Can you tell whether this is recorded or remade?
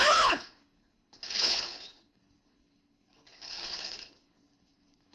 remade